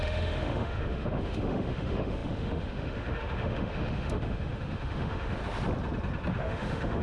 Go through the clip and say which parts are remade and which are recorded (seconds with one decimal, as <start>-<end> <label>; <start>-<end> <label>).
0.0-5.4 remade; 5.4-6.4 recorded; 6.4-7.0 remade